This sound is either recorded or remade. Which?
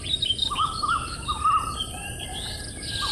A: recorded